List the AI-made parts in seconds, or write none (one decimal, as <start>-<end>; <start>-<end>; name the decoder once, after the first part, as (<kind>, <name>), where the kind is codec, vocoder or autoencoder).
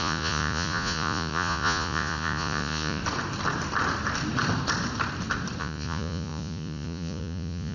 0.0-3.0 (vocoder, Vocos); 5.6-7.7